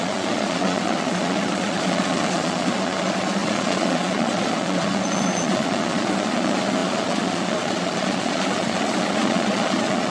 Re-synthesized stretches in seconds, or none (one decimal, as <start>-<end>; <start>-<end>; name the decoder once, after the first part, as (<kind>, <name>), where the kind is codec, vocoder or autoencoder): 0.0-10.1 (vocoder, Vocos)